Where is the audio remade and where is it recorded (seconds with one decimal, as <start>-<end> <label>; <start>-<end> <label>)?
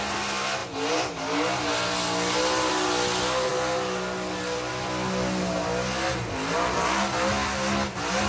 0.0-8.3 recorded